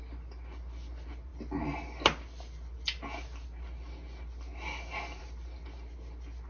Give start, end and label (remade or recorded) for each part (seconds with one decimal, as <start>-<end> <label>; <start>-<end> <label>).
0.0-6.5 recorded